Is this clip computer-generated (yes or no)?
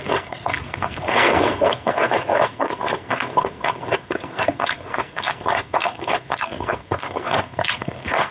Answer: yes